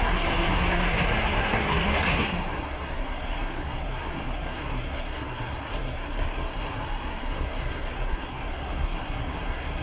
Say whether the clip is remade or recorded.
remade